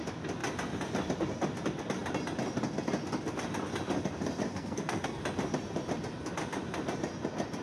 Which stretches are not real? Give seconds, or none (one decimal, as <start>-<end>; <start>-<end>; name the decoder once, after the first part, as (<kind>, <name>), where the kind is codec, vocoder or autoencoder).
4.5-5.2 (codec, SNAC)